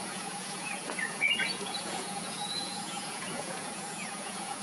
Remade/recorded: remade